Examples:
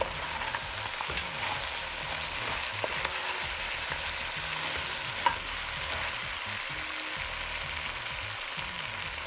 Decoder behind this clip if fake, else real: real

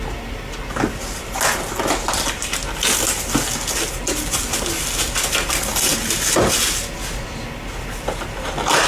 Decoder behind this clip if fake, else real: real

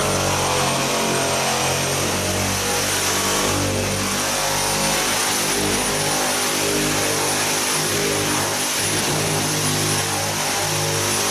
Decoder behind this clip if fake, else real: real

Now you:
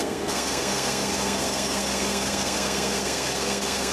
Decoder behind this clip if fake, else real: fake, codec, SNAC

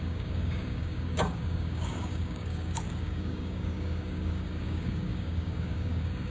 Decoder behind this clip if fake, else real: fake, codec, DAC